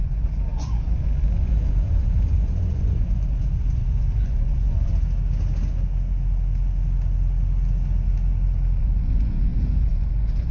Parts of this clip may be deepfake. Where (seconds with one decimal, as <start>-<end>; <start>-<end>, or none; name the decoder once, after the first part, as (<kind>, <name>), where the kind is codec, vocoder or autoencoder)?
0.0-4.9 (vocoder, Vocos); 8.8-10.5